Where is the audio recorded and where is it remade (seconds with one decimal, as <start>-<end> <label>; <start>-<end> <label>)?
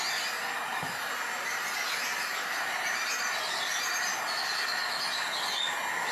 0.0-0.7 recorded; 0.7-4.2 remade; 4.2-6.1 recorded